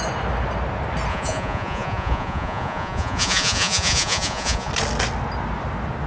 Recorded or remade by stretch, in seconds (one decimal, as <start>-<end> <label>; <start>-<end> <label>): 0.0-1.1 recorded; 1.1-4.7 remade; 4.7-6.1 recorded